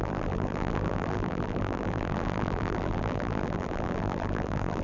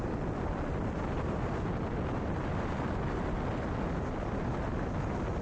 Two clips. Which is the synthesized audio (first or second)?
first